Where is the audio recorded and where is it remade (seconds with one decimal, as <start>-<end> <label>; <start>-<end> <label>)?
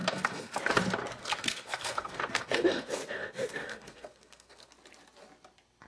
0.0-0.6 remade; 0.6-1.2 recorded; 1.2-4.7 remade; 4.7-5.9 recorded